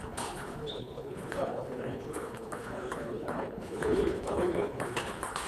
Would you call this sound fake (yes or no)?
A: yes